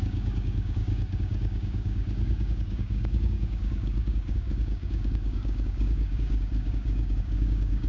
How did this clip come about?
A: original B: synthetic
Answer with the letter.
B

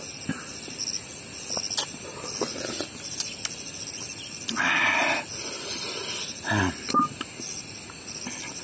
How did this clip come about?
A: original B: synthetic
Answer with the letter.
A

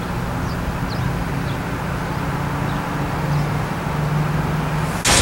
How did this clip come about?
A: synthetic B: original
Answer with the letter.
B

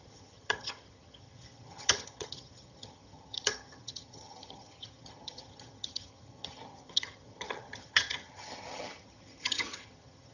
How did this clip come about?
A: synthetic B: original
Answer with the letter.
A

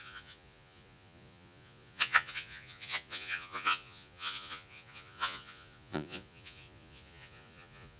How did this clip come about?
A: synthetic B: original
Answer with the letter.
A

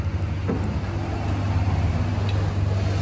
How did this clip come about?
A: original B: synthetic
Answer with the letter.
A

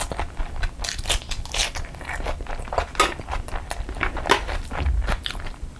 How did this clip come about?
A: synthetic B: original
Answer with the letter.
B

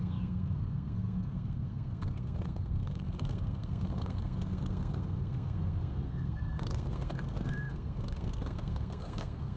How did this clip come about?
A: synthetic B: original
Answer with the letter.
A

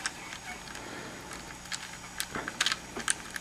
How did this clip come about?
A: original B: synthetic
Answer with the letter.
A